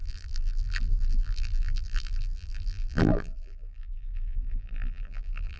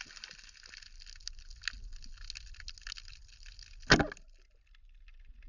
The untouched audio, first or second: second